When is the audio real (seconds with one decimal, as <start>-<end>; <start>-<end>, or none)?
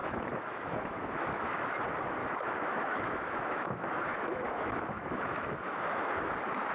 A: 1.7-2.2; 6.2-6.7